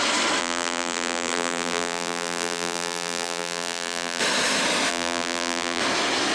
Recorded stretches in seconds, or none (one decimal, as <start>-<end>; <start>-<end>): 0.0-0.4; 4.2-4.9; 5.8-6.3